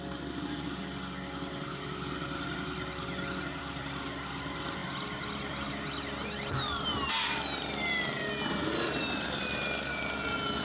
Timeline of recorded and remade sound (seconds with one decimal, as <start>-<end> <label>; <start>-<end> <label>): 0.0-10.6 recorded